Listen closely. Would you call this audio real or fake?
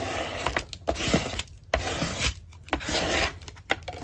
real